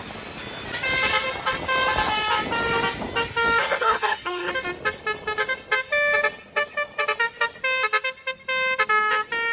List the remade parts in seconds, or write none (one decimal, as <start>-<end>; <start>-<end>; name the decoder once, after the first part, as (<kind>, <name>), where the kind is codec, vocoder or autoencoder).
3.6-4.5 (codec, SNAC)